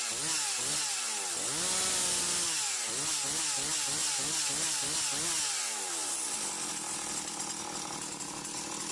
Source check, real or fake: real